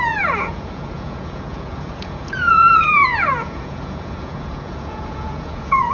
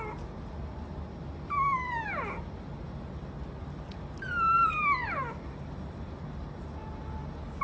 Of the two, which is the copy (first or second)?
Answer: first